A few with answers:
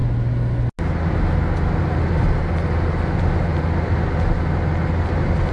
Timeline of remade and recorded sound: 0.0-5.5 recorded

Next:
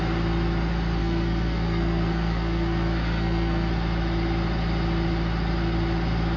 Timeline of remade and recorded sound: 0.0-1.0 recorded; 1.0-3.7 remade; 3.7-6.4 recorded

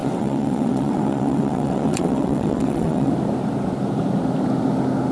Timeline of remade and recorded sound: 0.0-3.1 remade; 3.1-5.1 recorded